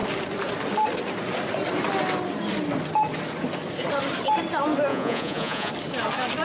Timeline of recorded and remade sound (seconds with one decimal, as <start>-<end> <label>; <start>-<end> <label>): 0.0-4.9 recorded; 4.9-5.7 remade; 5.7-6.4 recorded

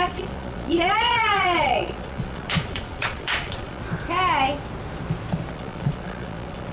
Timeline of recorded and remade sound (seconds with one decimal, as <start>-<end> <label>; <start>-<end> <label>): 0.0-3.8 remade; 3.8-5.5 recorded; 5.5-6.7 remade